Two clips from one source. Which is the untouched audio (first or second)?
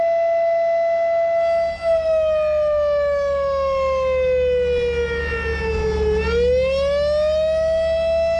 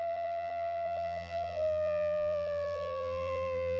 first